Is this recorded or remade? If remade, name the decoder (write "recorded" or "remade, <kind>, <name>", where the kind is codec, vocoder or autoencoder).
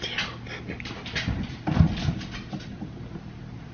recorded